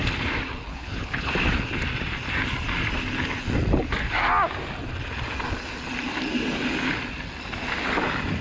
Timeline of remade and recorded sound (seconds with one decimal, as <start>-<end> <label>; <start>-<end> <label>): 0.0-0.7 recorded; 0.7-1.3 remade; 1.3-8.4 recorded